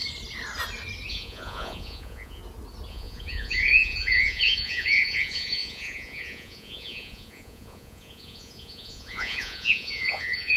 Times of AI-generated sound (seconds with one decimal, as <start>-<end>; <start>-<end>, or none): 1.1-2.4; 2.9-10.6